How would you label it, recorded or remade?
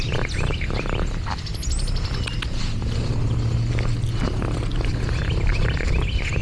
recorded